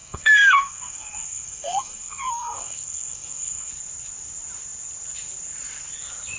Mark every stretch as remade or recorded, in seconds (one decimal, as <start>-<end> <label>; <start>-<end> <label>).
0.0-3.7 remade; 3.7-6.4 recorded